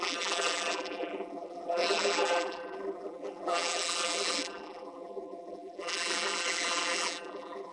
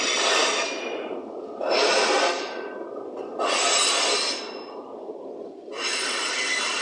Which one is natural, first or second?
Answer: second